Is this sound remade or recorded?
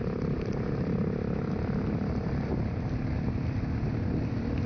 recorded